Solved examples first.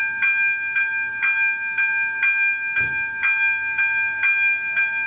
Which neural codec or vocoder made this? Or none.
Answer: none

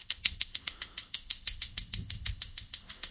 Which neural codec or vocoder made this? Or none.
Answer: codec, ZipCodec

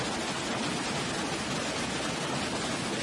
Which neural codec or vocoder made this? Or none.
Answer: none